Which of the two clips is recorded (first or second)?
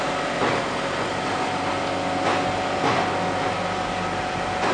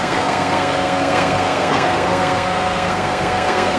first